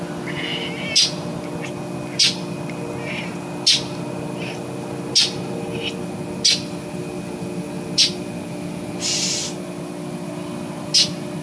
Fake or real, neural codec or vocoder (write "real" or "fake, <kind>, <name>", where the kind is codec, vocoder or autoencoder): real